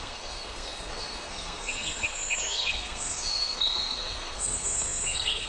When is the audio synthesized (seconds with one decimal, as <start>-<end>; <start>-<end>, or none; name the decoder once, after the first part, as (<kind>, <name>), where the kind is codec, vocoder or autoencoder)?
0.0-5.5 (codec, SNAC)